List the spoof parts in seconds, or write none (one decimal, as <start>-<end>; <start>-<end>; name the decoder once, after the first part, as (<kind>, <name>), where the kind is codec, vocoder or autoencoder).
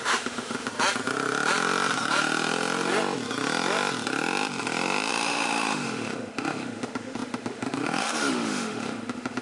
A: 0.0-0.7 (autoencoder, DAC-VAE); 5.1-9.4